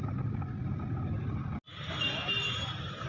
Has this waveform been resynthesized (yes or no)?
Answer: no